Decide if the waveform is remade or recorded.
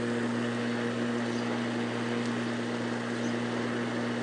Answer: recorded